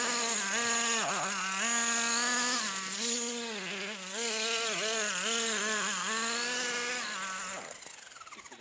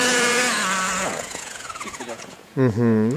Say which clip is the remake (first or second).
second